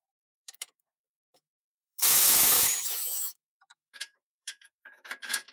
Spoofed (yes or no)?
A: yes